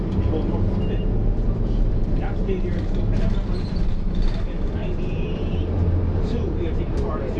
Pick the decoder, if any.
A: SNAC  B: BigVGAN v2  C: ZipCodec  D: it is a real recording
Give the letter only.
B